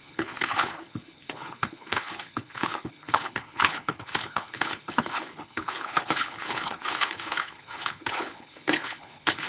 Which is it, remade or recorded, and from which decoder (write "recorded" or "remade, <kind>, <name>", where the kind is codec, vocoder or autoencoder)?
remade, codec, HILCodec